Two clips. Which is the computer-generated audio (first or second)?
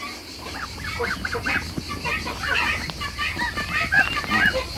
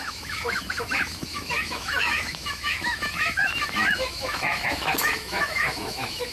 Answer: second